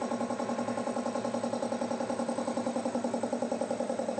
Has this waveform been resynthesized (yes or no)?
no